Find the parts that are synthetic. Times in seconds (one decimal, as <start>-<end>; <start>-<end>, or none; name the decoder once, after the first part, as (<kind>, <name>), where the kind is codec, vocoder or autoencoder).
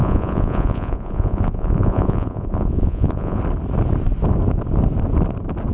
0.0-3.4 (vocoder, Vocos)